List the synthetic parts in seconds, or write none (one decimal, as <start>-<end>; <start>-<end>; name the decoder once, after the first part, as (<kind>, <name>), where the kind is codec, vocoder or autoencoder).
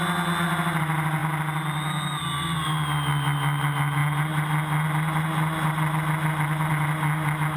none